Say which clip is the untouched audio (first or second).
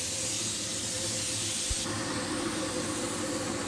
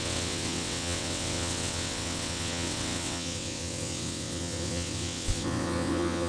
first